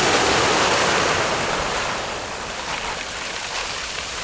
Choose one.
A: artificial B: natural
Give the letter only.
B